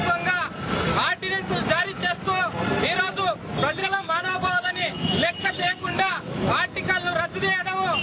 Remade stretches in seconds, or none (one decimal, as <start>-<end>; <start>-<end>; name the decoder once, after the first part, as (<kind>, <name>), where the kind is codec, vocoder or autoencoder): 3.8-6.5 (autoencoder, DAC-VAE)